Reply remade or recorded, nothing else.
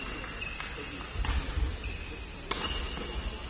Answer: recorded